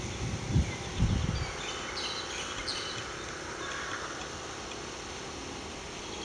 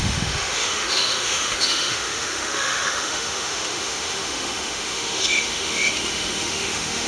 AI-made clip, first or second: second